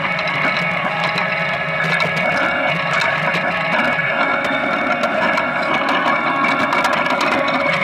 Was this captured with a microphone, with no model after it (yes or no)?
yes